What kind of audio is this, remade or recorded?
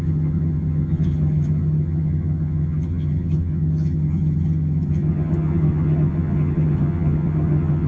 remade